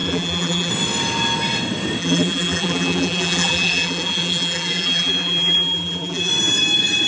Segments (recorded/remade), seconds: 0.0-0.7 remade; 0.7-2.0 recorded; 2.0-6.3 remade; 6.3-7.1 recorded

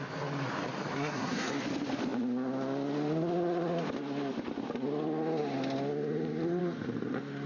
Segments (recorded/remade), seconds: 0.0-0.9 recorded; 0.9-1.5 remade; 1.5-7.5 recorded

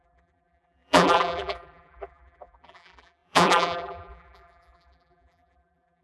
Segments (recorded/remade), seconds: 0.0-6.0 remade

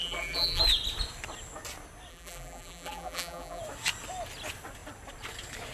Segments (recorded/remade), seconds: 0.0-0.6 remade; 0.6-2.1 recorded; 2.1-3.6 remade; 3.6-5.7 recorded

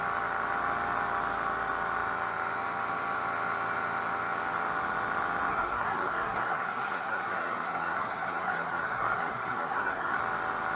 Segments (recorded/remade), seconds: 0.0-5.5 recorded; 5.5-10.2 remade; 10.2-10.8 recorded

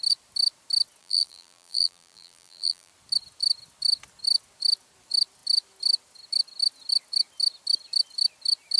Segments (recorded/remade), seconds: 0.0-1.0 recorded; 1.0-2.9 remade; 2.9-8.8 recorded